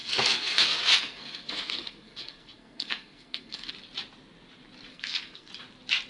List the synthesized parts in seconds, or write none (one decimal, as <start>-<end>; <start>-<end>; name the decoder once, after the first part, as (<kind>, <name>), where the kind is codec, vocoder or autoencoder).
0.0-3.7 (codec, SNAC); 4.9-5.5